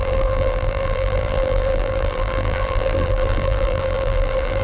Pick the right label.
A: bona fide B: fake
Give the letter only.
B